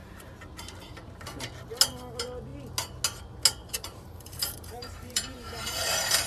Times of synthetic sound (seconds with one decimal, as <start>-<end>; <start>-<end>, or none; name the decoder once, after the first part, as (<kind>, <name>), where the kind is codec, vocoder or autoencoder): 3.6-6.3 (vocoder, BigVGAN v2)